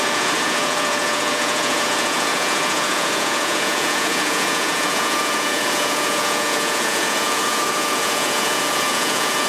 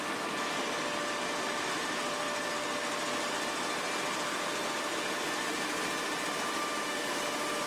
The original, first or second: second